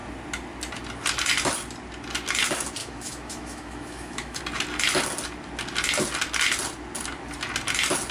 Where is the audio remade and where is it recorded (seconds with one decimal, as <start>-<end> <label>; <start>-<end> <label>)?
0.0-2.8 recorded; 2.8-4.4 remade; 4.4-8.1 recorded